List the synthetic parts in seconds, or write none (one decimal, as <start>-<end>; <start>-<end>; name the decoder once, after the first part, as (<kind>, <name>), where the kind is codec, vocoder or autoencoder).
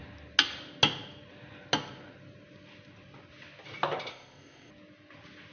4.1-4.7 (codec, ZipCodec)